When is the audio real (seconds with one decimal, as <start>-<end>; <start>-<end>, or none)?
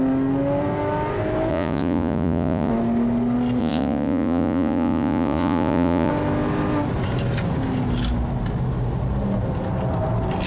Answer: 0.0-1.5; 2.7-3.6; 6.1-10.5